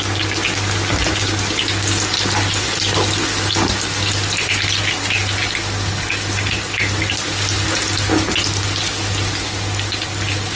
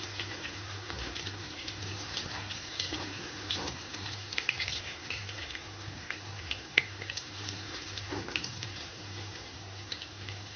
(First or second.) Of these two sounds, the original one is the first